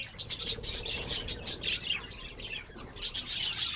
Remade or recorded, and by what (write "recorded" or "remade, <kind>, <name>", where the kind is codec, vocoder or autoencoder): recorded